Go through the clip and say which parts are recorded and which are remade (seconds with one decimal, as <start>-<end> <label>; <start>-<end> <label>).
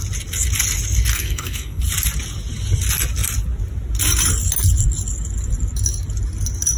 0.0-1.1 recorded; 1.1-1.8 remade; 1.8-6.8 recorded